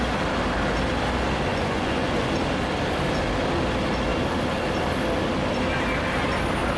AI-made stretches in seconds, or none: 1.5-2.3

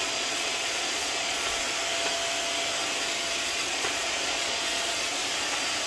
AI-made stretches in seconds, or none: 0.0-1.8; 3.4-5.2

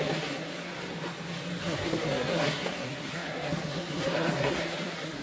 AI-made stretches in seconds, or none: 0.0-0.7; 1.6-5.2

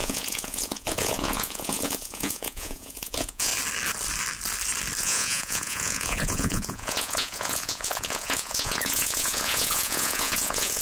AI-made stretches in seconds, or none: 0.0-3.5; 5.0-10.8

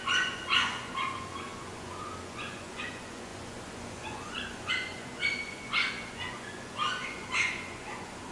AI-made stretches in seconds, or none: 0.0-8.3

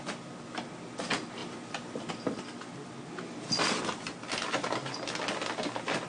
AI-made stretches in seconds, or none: 1.4-2.1

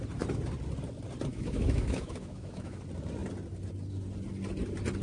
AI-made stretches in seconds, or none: 1.3-2.8

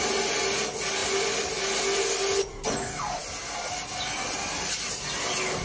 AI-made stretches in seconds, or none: none